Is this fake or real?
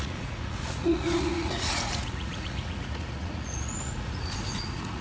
fake